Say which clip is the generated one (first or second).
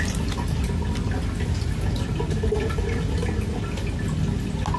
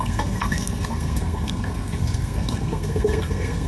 second